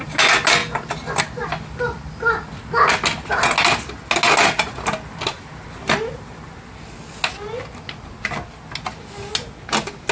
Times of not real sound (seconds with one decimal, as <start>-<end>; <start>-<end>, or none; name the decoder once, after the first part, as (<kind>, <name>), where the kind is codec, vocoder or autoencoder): none